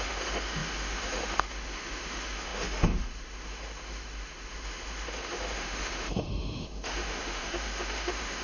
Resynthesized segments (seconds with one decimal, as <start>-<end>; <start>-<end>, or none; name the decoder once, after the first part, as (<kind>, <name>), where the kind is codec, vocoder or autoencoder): 0.0-8.4 (autoencoder, DAC-VAE)